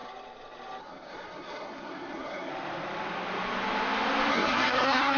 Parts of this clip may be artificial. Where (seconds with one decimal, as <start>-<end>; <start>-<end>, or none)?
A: 0.8-2.5; 4.3-5.2

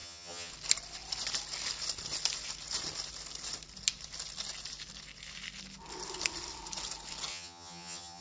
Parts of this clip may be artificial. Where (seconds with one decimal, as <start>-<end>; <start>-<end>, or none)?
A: 0.0-0.5; 7.3-8.2

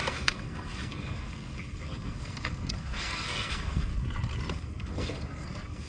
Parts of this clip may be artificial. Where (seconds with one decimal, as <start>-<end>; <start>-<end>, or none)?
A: 0.0-3.9; 4.5-5.9